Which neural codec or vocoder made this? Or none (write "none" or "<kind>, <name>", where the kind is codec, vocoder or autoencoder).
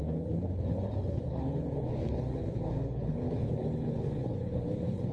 codec, HILCodec